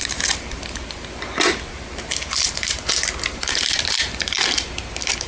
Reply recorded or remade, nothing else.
remade